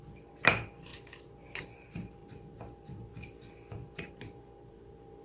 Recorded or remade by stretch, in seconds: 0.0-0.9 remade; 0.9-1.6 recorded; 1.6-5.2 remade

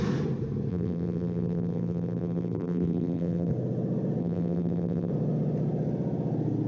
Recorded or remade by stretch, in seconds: 0.0-0.7 recorded; 0.7-3.5 remade; 3.5-4.2 recorded; 4.2-5.1 remade; 5.1-6.7 recorded

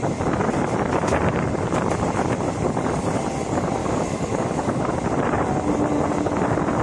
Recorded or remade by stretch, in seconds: 0.0-3.8 recorded; 3.8-4.9 remade; 4.9-6.8 recorded

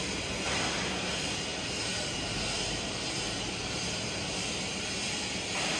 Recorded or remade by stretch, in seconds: 0.0-5.8 recorded